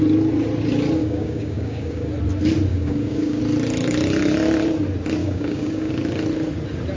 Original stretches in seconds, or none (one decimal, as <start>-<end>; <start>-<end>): 0.0-1.0; 2.1-2.7; 3.4-5.2; 5.9-7.0